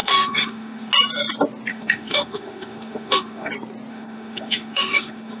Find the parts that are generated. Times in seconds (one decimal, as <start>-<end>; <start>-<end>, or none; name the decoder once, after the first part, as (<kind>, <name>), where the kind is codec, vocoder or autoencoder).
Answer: 0.0-0.9 (autoencoder, DAC-VAE); 1.7-3.5; 3.9-5.4